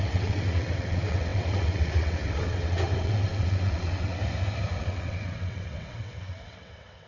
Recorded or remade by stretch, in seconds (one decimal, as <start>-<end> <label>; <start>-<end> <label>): 0.0-4.2 remade; 4.2-4.7 recorded; 4.7-7.1 remade